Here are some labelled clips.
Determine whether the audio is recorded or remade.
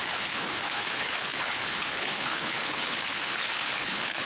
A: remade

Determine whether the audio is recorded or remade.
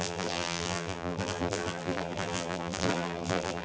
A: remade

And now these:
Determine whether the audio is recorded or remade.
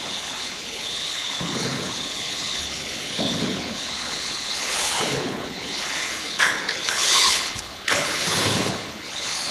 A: remade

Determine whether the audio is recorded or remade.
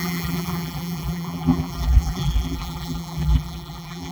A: remade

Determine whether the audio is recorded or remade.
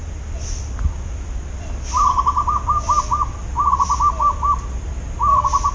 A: recorded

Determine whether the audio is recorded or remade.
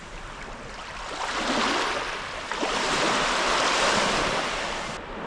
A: recorded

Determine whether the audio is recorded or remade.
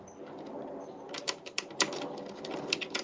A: recorded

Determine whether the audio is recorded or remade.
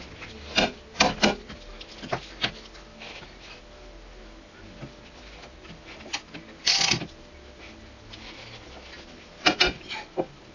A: recorded